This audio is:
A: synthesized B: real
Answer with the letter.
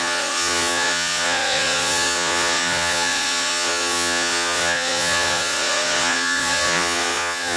A